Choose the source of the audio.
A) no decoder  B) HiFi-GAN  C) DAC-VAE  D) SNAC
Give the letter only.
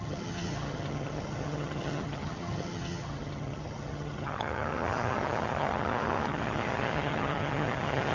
B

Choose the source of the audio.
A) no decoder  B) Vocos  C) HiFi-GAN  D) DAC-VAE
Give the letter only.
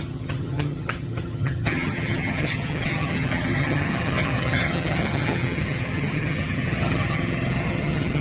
C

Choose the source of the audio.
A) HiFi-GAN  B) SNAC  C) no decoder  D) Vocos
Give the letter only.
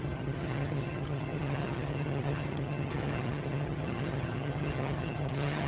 A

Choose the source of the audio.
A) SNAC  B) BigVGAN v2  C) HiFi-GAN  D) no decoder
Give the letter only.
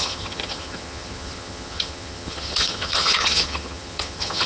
C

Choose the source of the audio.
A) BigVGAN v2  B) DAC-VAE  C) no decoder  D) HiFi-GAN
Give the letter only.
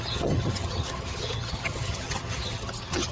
D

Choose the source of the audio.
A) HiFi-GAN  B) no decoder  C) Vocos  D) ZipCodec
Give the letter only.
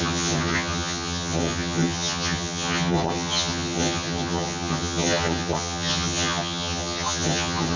A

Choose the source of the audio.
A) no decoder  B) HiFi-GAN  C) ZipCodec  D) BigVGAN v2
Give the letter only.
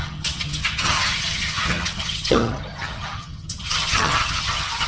B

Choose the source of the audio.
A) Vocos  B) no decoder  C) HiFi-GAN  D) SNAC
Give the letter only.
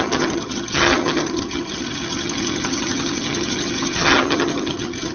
C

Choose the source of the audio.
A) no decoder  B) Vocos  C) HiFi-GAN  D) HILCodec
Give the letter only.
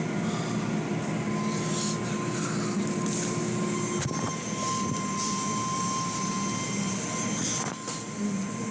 A